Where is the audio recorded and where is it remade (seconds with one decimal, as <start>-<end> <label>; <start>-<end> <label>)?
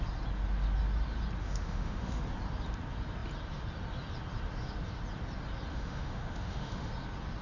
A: 0.0-1.4 recorded; 1.4-2.2 remade; 2.2-5.7 recorded; 5.7-6.9 remade; 6.9-7.4 recorded